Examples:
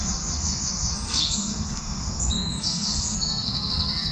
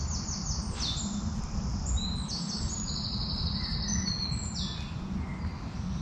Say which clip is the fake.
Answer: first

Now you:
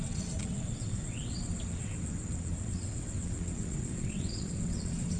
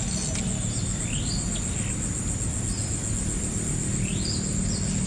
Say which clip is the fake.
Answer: first